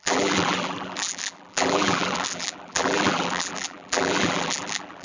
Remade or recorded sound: remade